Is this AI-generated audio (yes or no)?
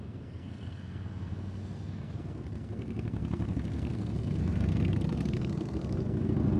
yes